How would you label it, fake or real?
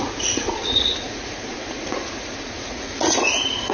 fake